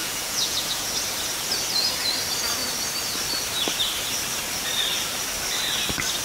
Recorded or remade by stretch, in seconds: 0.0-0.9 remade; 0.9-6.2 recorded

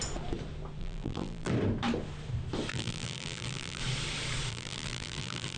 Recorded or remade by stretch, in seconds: 0.0-0.8 recorded; 0.8-1.5 remade; 1.5-2.7 recorded; 2.7-3.8 remade; 3.8-4.5 recorded; 4.5-5.6 remade

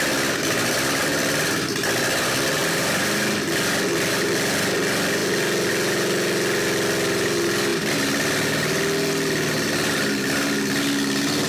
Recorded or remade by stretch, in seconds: 0.0-11.5 recorded

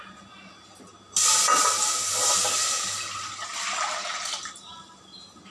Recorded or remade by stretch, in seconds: 0.0-5.5 recorded

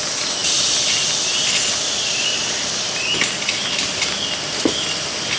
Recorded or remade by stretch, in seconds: 0.0-5.4 recorded

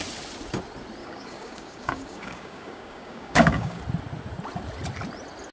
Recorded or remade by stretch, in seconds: 0.0-1.0 recorded; 1.0-3.8 remade; 3.8-5.5 recorded

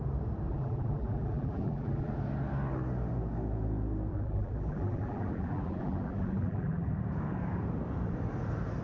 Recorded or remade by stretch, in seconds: 0.0-0.5 recorded; 0.5-2.1 remade; 2.1-4.1 recorded; 4.1-6.9 remade; 6.9-8.8 recorded